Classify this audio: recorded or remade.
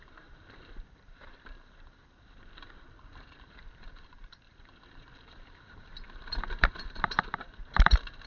remade